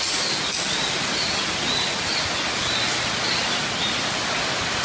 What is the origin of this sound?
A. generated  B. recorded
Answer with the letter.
B